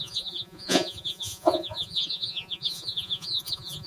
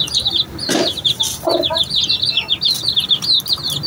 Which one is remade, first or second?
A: first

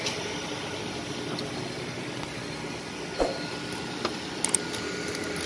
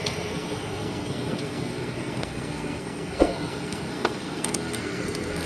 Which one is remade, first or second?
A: second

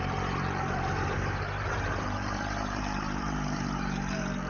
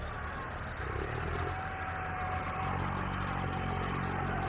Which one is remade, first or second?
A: first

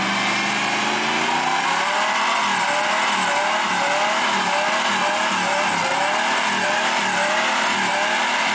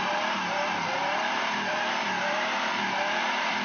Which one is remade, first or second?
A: second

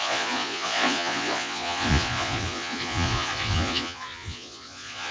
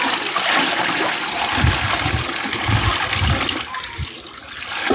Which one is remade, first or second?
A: first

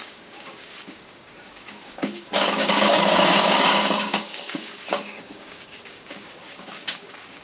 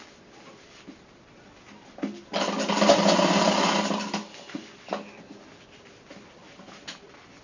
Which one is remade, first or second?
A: first